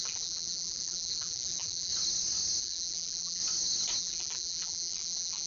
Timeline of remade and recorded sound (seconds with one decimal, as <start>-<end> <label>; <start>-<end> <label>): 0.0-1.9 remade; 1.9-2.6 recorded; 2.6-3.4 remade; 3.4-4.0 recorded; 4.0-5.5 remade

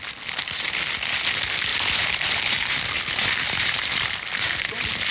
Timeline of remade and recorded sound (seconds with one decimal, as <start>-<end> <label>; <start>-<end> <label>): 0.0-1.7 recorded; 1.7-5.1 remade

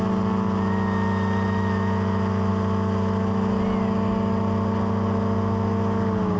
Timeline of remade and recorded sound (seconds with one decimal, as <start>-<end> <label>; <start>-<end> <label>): 0.0-6.4 recorded